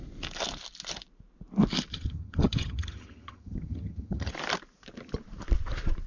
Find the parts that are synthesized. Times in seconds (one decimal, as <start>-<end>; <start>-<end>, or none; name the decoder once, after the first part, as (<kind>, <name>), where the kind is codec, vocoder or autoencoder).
1.9-4.3 (vocoder, HiFi-GAN)